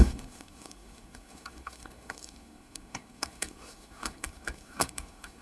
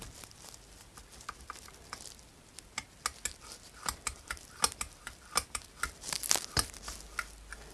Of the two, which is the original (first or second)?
second